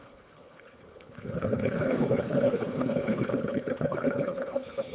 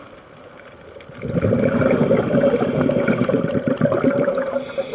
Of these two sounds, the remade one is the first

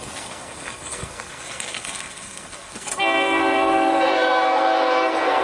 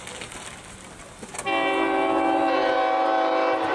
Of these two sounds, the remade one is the first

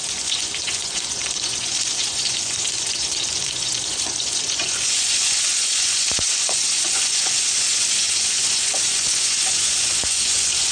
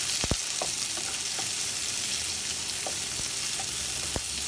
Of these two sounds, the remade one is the first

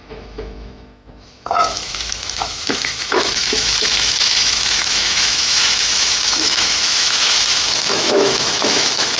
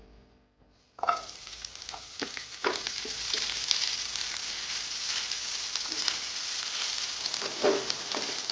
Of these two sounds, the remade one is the first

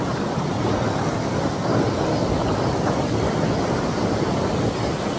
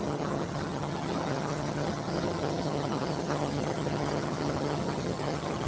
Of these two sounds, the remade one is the second